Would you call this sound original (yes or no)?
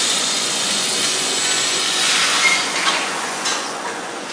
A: no